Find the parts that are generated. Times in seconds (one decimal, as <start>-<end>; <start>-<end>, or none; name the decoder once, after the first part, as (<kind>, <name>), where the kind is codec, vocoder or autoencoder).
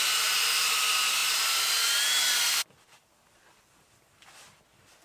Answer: none